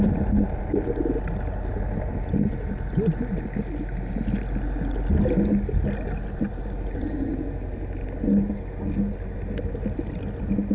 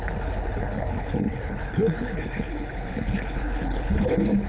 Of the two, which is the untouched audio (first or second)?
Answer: first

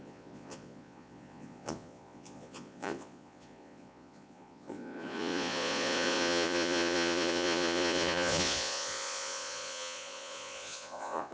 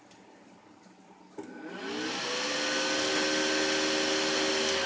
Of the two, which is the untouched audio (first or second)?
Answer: second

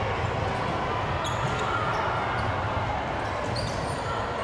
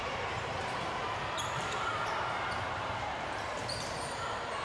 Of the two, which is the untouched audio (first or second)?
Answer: first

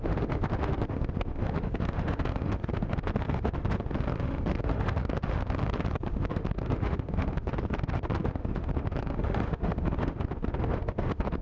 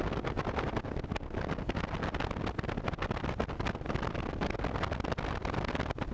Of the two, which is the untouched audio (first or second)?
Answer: second